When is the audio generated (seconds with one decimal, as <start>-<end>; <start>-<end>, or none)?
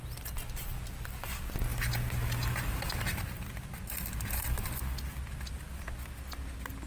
none